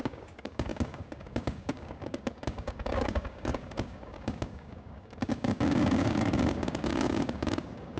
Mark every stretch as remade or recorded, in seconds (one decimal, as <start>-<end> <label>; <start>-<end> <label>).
0.0-8.0 remade